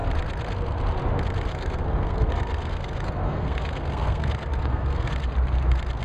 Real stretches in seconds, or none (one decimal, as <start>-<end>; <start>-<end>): 0.0-1.5; 5.1-6.0